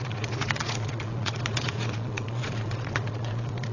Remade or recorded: remade